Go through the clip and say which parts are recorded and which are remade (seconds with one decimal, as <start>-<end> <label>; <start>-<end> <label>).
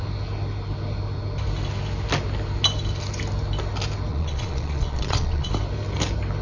0.0-4.1 recorded; 4.1-5.5 remade; 5.5-6.4 recorded